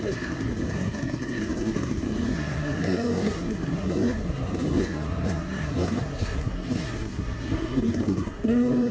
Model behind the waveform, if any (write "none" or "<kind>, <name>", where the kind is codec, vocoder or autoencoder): codec, SNAC